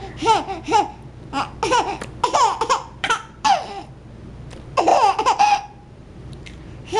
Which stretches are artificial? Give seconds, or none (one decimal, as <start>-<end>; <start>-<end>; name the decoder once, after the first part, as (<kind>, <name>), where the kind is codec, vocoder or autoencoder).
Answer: 2.7-3.6 (vocoder, BigVGAN v2); 4.9-6.6